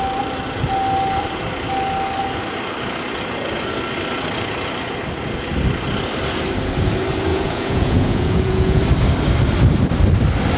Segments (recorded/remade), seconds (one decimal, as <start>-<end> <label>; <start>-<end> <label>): 0.0-7.3 recorded; 7.3-8.8 remade; 8.8-10.6 recorded